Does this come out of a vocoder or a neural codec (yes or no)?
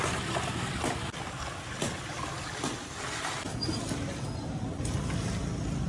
no